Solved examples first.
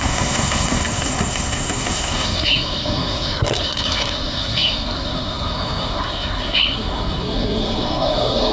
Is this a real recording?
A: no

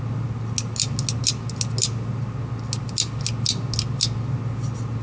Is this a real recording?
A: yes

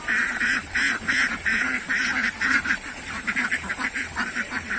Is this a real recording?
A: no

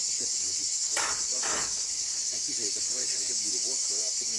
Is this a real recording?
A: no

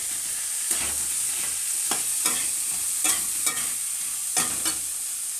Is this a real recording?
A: yes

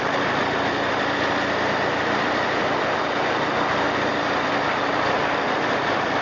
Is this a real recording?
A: yes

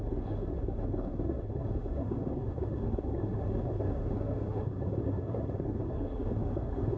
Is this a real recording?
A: no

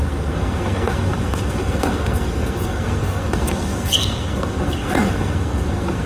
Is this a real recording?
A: no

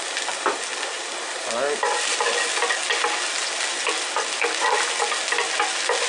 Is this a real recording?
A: yes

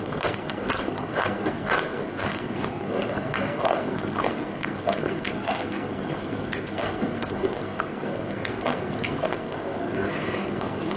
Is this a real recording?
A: no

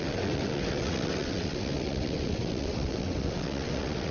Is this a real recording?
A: no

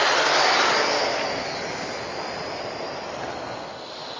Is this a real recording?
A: yes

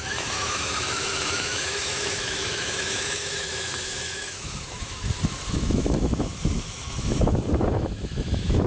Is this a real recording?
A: no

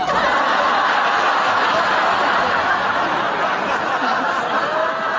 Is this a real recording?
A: yes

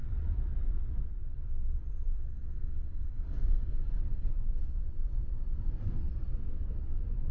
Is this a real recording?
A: no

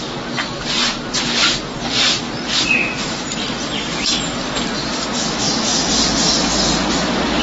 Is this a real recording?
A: yes